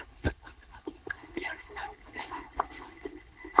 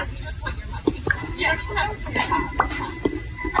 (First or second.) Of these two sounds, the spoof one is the first